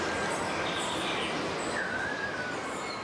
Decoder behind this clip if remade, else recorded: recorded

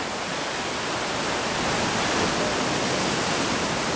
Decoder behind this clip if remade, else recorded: recorded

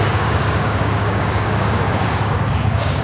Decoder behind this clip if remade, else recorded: remade, codec, DAC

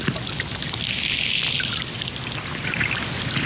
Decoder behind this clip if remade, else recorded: recorded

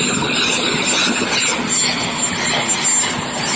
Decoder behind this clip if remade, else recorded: recorded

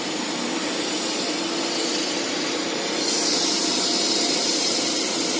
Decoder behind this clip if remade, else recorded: recorded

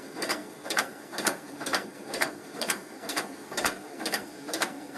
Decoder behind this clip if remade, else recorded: remade, codec, SNAC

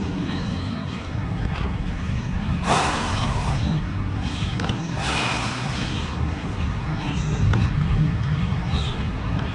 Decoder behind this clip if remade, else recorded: remade, codec, SNAC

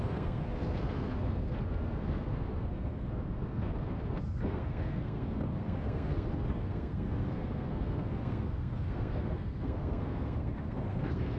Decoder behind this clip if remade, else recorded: remade, codec, SNAC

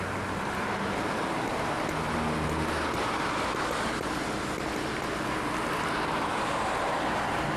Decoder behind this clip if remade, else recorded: recorded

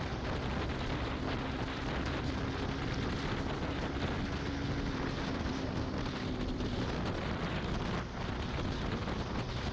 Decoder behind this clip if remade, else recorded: recorded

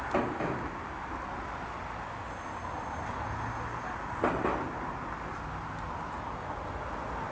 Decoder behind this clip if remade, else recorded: recorded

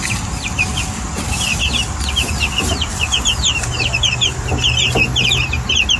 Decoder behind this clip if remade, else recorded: recorded